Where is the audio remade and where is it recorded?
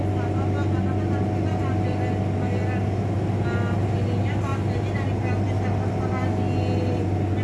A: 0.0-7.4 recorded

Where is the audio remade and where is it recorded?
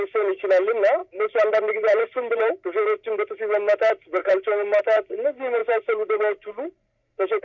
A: 0.0-1.0 recorded; 1.0-2.5 remade; 2.5-4.2 recorded; 4.2-4.8 remade; 4.8-5.6 recorded; 5.6-7.4 remade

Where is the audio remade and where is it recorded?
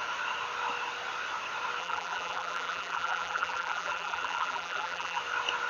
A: 0.0-1.8 recorded; 1.8-5.2 remade; 5.2-5.7 recorded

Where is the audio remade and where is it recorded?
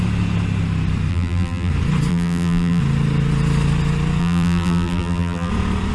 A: 0.0-1.1 recorded; 1.1-1.7 remade; 1.7-2.1 recorded; 2.1-2.8 remade; 2.8-4.2 recorded; 4.2-5.5 remade; 5.5-5.9 recorded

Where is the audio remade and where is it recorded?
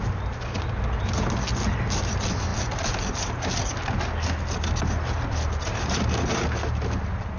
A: 0.0-7.4 recorded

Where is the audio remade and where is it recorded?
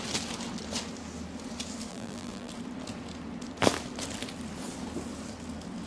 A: 0.0-1.9 recorded; 1.9-2.5 remade; 2.5-5.9 recorded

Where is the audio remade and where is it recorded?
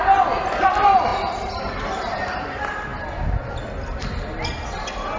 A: 0.0-1.1 recorded; 1.1-2.4 remade; 2.4-5.2 recorded